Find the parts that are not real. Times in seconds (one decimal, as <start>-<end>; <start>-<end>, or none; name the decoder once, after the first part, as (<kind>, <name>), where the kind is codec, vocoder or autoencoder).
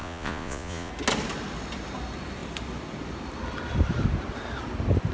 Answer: 0.0-0.9 (vocoder, Vocos)